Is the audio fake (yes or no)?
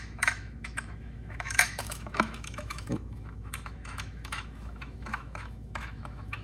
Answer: yes